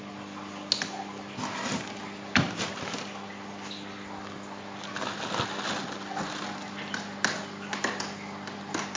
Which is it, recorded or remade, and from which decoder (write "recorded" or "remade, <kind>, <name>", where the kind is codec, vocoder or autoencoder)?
recorded